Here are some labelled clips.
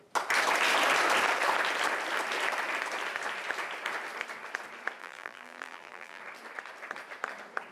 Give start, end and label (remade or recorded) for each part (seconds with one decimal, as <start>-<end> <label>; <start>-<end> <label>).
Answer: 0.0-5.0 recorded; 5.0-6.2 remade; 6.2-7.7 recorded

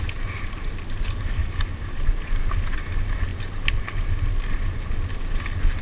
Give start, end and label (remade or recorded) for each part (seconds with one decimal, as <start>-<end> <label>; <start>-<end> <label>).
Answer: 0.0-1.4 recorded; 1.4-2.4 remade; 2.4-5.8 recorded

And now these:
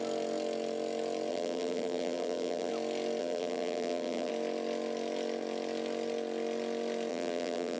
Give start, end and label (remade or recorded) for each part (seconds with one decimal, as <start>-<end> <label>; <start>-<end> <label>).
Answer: 0.0-1.3 recorded; 1.3-2.7 remade; 2.7-3.2 recorded; 3.2-4.3 remade; 4.3-7.1 recorded; 7.1-7.8 remade

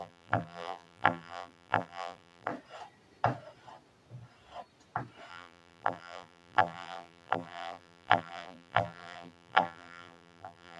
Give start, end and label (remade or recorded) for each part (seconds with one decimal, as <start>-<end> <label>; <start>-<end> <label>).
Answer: 0.0-2.5 remade; 2.5-5.3 recorded; 5.3-10.8 remade